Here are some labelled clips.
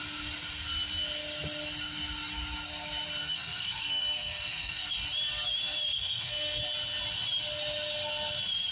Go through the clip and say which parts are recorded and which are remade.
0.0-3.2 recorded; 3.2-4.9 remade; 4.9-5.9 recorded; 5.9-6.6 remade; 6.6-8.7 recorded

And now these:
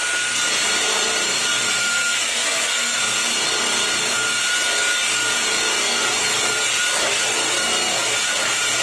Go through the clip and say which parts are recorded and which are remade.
0.0-1.8 recorded; 1.8-3.0 remade; 3.0-8.8 recorded

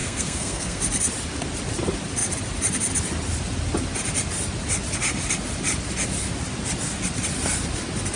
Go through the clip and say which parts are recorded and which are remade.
0.0-0.8 remade; 0.8-8.2 recorded

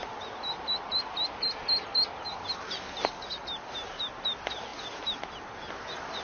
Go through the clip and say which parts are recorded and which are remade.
0.0-6.2 recorded

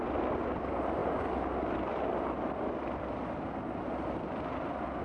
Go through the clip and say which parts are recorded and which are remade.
0.0-5.0 recorded

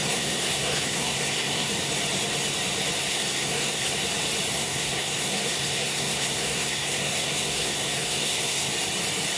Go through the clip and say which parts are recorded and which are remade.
0.0-1.7 remade; 1.7-3.1 recorded; 3.1-3.9 remade; 3.9-4.5 recorded; 4.5-8.7 remade; 8.7-9.4 recorded

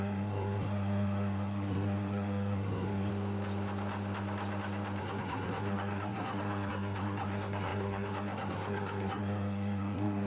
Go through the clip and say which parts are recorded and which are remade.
0.0-3.1 remade; 3.1-5.0 recorded; 5.0-10.3 remade